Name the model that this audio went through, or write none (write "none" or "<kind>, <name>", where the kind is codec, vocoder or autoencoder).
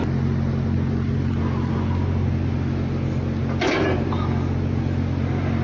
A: none